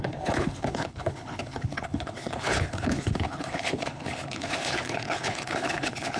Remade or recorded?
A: remade